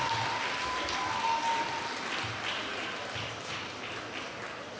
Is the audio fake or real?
real